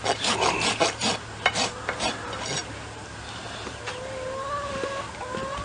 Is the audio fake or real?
real